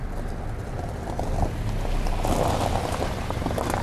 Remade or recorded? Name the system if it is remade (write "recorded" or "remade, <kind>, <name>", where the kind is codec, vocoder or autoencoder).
recorded